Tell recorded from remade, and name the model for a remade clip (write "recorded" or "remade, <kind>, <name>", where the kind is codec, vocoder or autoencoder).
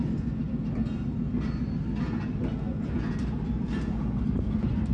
recorded